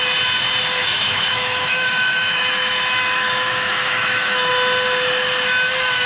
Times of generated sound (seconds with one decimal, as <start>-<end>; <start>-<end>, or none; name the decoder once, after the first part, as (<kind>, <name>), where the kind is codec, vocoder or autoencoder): 0.8-4.5 (autoencoder, DAC-VAE)